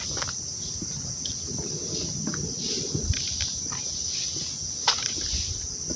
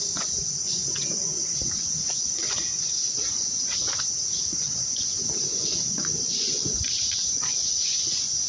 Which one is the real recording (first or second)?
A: first